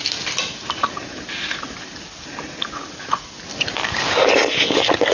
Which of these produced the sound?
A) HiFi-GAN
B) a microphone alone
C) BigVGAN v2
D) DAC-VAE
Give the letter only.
B